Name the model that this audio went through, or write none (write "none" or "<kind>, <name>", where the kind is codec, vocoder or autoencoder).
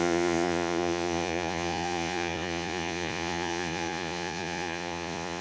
vocoder, Vocos